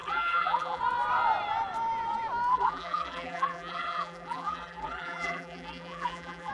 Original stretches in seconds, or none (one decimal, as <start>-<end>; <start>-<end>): 0.8-2.5